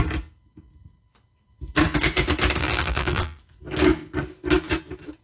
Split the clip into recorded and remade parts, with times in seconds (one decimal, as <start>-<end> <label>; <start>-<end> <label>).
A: 0.0-2.6 recorded; 2.6-3.4 remade; 3.4-5.2 recorded